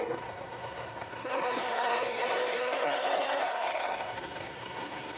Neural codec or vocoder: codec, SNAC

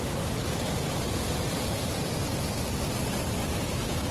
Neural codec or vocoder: none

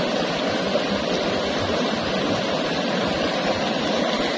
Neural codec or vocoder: none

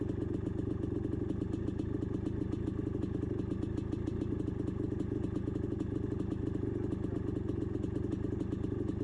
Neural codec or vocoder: none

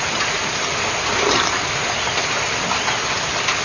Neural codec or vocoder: none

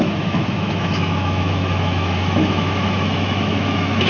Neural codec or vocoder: autoencoder, DAC-VAE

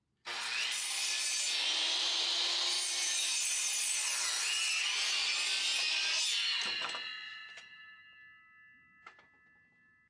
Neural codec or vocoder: none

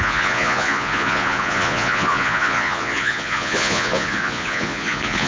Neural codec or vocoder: vocoder, Vocos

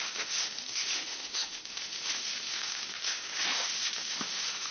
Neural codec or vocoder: autoencoder, DAC-VAE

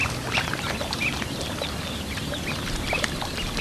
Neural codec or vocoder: vocoder, BigVGAN v2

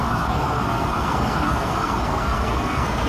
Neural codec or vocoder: codec, SNAC